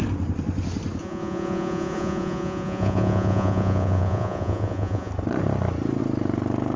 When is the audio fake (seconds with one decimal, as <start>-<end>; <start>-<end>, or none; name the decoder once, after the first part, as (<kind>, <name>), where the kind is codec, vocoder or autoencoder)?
1.0-5.1 (vocoder, Vocos)